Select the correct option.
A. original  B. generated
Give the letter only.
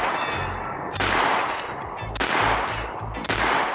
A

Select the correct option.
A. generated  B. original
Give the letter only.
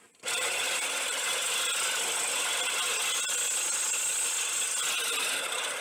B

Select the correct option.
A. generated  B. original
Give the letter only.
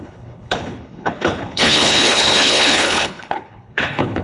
A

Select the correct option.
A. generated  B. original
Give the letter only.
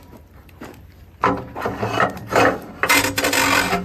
B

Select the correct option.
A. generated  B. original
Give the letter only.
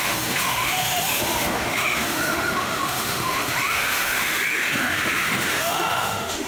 A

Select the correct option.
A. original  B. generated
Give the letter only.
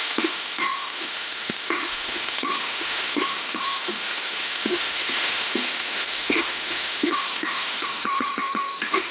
B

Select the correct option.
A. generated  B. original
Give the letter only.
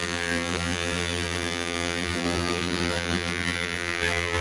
A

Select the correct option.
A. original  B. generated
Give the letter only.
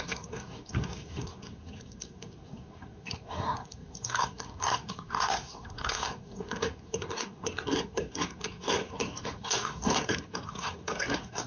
B